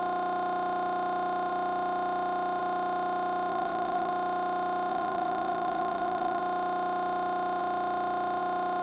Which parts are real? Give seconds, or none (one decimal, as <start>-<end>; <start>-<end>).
0.0-3.5; 4.1-4.9; 6.4-8.8